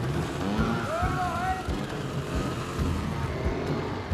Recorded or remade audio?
recorded